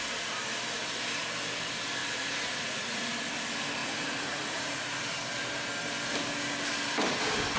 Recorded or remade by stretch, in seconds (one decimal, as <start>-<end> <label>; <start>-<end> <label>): 0.0-2.0 recorded; 2.0-3.0 remade; 3.0-3.8 recorded; 3.8-4.9 remade; 4.9-7.6 recorded